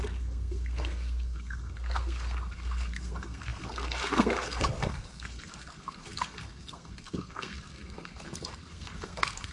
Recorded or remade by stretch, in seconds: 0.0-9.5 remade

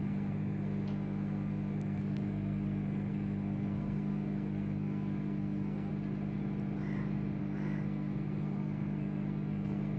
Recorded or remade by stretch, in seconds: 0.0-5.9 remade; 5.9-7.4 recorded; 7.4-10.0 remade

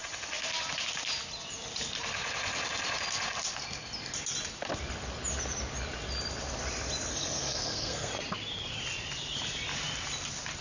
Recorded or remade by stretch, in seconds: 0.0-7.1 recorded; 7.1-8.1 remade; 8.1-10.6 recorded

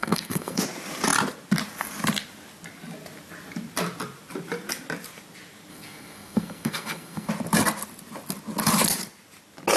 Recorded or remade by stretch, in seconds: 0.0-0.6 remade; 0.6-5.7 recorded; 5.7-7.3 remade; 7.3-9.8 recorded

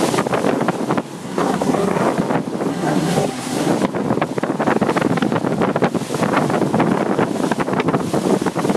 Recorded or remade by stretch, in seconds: 0.0-1.2 recorded; 1.2-2.0 remade; 2.0-2.7 recorded; 2.7-3.7 remade; 3.7-8.8 recorded